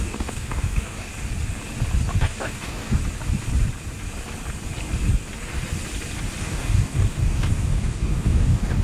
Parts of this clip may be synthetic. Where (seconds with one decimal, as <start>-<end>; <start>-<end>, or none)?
0.0-1.1; 2.2-3.0; 6.4-8.8